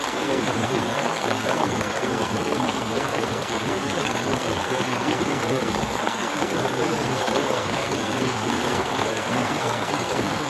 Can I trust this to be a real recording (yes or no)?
no